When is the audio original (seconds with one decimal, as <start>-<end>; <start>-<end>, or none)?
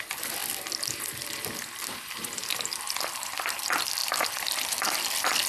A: 0.0-5.5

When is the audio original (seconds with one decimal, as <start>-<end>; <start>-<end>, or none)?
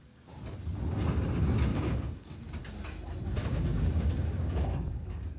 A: 0.0-1.7; 2.6-3.4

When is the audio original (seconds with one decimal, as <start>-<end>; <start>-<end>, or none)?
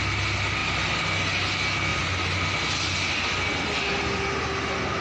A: 0.0-5.0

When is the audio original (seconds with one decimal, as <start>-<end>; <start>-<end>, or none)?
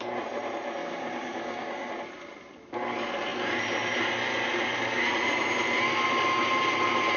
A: 0.0-0.8; 1.9-7.2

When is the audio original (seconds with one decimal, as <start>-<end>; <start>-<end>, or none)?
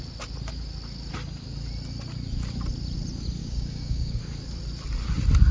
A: 0.0-3.4; 4.2-5.5